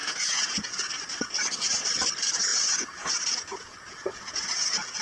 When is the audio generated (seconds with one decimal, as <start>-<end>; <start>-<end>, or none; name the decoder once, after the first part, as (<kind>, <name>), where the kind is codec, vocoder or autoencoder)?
0.0-0.9 (vocoder, Vocos); 2.5-5.0